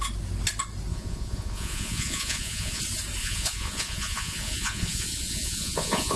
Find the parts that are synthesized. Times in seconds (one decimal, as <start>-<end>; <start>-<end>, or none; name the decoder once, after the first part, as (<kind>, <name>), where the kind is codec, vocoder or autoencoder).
0.9-2.8 (vocoder, Vocos); 3.2-6.2